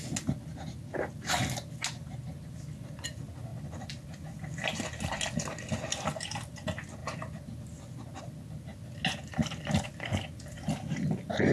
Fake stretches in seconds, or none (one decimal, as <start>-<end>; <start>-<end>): 3.5-5.0